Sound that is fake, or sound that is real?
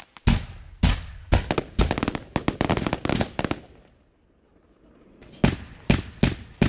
real